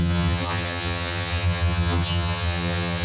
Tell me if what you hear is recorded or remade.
remade